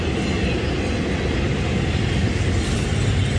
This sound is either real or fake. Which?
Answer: real